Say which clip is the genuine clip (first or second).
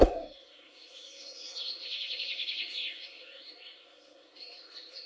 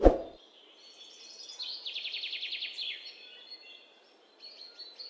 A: second